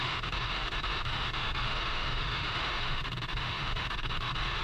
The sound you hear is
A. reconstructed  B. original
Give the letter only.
A